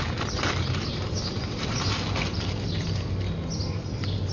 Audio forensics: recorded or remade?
recorded